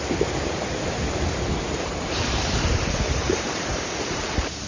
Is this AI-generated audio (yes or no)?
yes